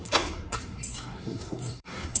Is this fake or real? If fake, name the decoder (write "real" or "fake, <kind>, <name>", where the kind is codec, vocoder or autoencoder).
fake, codec, SNAC